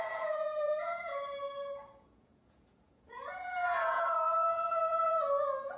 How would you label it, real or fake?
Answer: fake